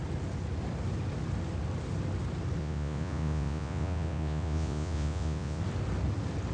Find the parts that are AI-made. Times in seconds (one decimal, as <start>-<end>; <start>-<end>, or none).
2.6-5.6

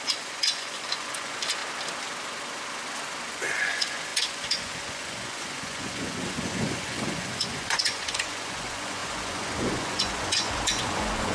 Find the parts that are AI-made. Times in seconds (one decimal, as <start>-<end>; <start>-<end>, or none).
0.0-1.6; 3.3-11.3